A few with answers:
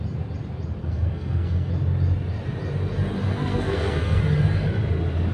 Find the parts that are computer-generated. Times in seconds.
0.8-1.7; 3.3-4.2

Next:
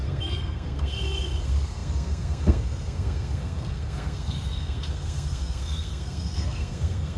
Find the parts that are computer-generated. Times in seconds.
0.0-7.2

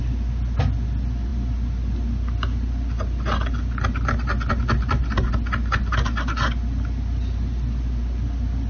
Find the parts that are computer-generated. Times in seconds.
none

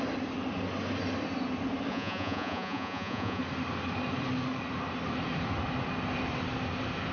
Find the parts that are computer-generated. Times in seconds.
1.9-3.4